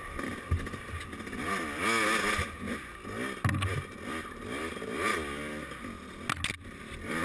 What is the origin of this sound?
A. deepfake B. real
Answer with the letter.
B